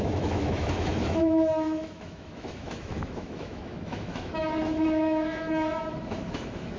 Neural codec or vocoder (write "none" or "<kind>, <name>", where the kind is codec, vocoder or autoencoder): autoencoder, DAC-VAE